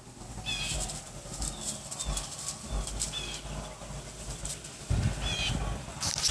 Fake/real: real